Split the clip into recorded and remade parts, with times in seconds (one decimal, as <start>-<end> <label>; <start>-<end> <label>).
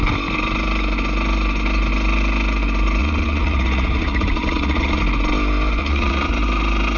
0.0-3.0 recorded; 3.0-5.0 remade; 5.0-5.8 recorded; 5.8-6.3 remade; 6.3-7.0 recorded